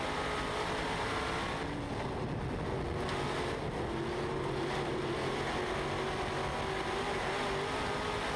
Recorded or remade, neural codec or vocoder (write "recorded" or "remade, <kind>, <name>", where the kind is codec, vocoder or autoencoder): recorded